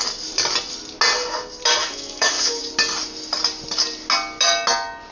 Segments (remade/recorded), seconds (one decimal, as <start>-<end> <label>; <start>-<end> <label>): 0.0-1.8 recorded; 1.8-2.6 remade; 2.6-5.1 recorded